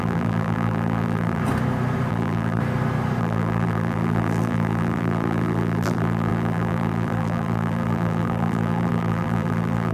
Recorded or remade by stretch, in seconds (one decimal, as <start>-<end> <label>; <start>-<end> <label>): 0.0-1.4 remade; 1.4-2.1 recorded; 2.1-2.6 remade; 2.6-3.2 recorded; 3.2-9.9 remade